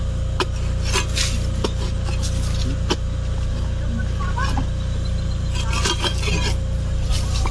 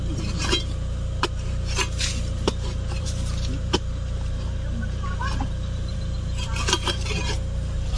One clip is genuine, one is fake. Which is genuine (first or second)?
first